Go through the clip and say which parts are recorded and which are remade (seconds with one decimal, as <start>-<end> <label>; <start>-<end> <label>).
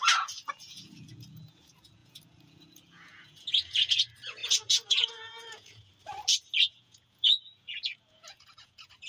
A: 0.0-5.9 remade; 5.9-6.6 recorded; 6.6-9.1 remade